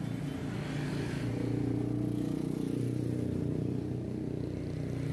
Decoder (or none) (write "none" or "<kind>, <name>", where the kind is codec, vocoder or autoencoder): none